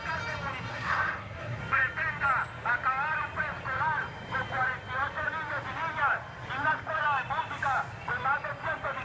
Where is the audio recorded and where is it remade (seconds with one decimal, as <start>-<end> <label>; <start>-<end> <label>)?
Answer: 0.0-0.7 recorded; 0.7-1.6 remade; 1.6-9.0 recorded